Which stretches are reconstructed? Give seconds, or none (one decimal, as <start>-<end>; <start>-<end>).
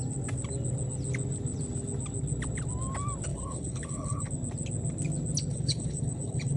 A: 3.3-4.3; 5.5-6.6